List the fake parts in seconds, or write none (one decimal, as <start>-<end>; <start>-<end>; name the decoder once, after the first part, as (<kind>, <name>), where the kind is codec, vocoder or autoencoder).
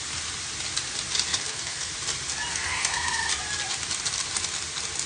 1.3-1.9 (codec, SNAC); 2.5-3.3